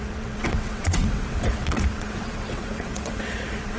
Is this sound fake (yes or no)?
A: yes